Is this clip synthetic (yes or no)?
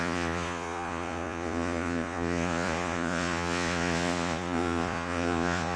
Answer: yes